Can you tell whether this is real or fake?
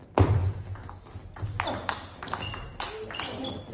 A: real